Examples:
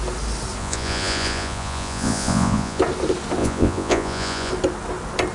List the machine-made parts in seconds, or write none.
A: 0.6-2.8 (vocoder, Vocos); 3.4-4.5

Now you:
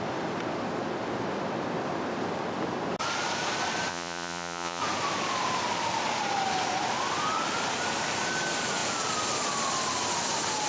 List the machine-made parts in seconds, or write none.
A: 3.9-4.8 (vocoder, Vocos)

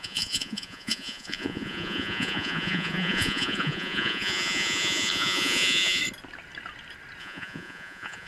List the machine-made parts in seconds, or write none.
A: 0.0-6.0 (vocoder, Vocos); 7.2-8.3

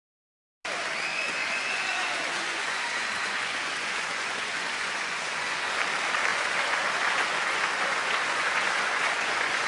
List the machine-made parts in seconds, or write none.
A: 1.1-5.8 (vocoder, Vocos); 6.3-9.7

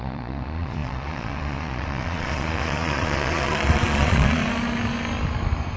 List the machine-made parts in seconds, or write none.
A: 0.0-4.4 (vocoder, Vocos)